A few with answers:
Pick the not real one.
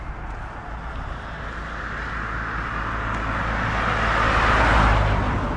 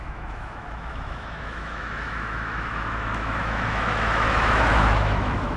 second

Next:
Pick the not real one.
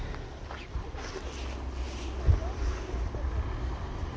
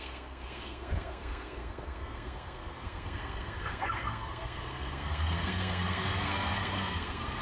second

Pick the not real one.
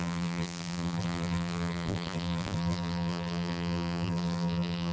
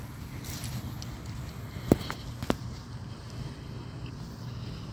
first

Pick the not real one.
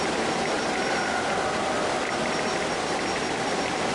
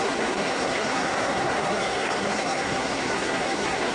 second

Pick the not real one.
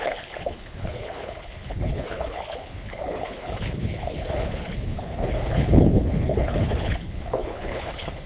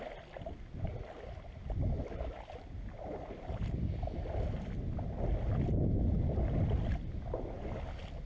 first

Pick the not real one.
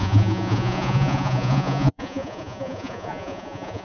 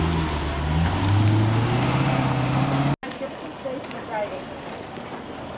first